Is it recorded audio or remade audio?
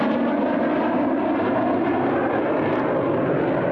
recorded